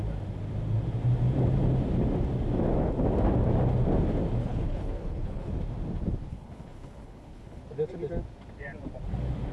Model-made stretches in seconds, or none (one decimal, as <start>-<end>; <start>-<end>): 4.4-5.5; 6.3-7.6